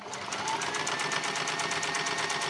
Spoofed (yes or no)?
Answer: no